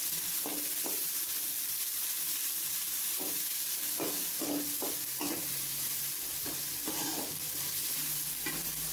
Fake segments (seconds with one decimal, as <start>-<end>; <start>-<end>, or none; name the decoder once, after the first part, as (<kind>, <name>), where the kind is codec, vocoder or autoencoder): none